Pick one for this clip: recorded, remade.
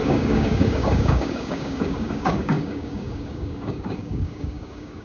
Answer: remade